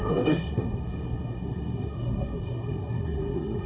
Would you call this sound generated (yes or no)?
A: yes